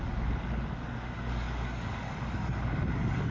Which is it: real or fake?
fake